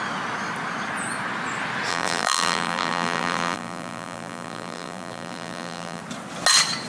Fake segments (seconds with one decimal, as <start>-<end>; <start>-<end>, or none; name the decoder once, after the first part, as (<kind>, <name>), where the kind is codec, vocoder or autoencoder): 1.9-6.0 (vocoder, BigVGAN v2)

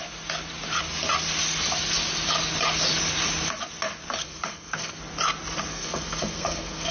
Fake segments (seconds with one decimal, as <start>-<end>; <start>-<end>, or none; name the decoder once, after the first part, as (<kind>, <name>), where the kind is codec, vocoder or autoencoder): 4.2-5.0 (codec, SNAC); 5.7-6.9

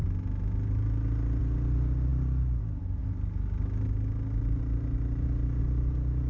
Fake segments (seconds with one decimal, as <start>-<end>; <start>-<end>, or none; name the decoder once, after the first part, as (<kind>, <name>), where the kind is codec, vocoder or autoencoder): none

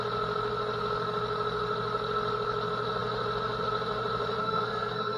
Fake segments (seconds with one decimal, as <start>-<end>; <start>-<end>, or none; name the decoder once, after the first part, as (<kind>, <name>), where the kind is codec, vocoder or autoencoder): 4.4-5.2 (codec, SNAC)

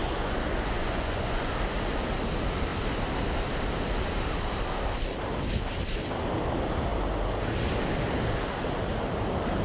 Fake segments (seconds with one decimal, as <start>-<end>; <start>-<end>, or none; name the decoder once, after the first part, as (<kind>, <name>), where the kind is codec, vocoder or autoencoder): 0.0-1.5 (vocoder, Vocos)

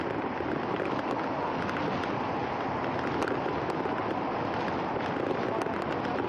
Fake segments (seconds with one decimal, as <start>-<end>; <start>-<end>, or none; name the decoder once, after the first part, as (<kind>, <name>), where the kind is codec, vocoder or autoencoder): none

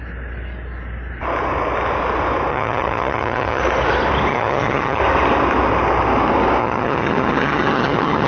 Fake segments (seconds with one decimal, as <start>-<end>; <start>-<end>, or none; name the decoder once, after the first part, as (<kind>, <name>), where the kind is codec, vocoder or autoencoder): 2.5-3.6 (vocoder, HiFi-GAN); 4.3-5.0; 6.6-8.3

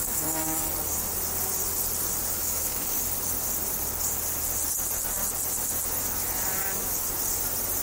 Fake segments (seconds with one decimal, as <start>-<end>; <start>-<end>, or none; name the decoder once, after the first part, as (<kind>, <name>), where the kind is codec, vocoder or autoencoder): 0.0-0.7 (codec, DAC); 2.3-3.0; 6.6-7.1